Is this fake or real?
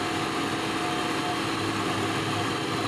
real